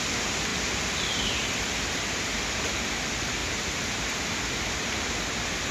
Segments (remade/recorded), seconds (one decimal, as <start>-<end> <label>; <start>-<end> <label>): 0.0-5.7 recorded